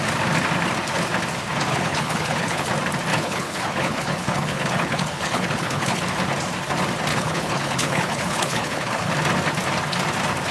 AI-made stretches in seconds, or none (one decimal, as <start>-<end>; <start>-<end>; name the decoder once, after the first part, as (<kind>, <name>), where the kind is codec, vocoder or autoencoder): 1.7-2.7 (codec, HILCodec); 3.1-6.0; 7.1-9.1